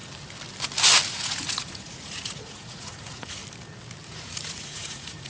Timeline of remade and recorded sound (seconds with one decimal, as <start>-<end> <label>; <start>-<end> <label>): 0.0-1.1 recorded; 1.1-3.4 remade; 3.4-4.1 recorded; 4.1-5.3 remade